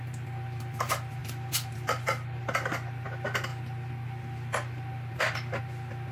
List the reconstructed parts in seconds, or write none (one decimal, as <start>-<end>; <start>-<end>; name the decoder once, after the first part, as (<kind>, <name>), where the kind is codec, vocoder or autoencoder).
none